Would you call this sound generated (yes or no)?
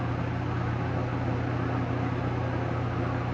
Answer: no